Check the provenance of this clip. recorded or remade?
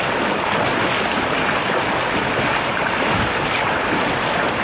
recorded